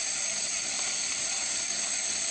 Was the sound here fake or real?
real